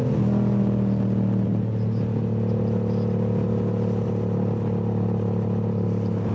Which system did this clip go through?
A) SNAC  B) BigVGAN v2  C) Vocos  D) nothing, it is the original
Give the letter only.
D